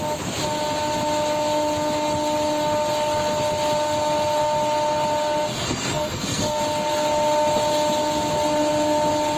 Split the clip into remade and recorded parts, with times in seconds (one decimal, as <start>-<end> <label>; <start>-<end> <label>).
0.0-5.5 recorded; 5.5-6.6 remade; 6.6-9.4 recorded